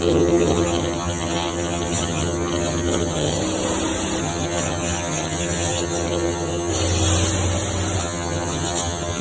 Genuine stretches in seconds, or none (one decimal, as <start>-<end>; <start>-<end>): 3.4-4.2; 6.7-8.0